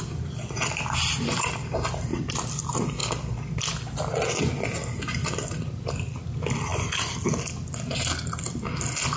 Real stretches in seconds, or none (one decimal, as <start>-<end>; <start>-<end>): 0.0-2.1; 2.6-9.2